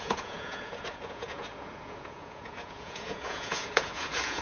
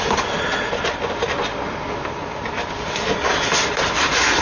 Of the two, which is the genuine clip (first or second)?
second